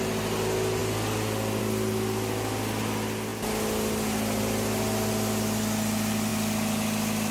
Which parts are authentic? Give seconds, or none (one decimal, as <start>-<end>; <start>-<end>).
0.0-7.3